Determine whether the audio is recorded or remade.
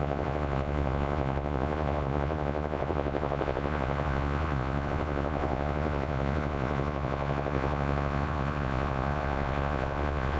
remade